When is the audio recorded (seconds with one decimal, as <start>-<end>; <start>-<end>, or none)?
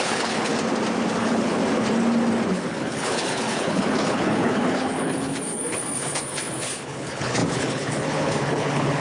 0.5-1.2; 1.6-2.5